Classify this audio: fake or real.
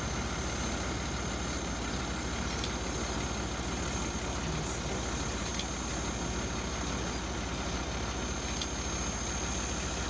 real